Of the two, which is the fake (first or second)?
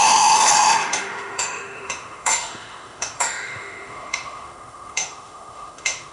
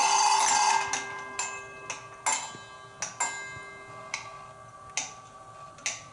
first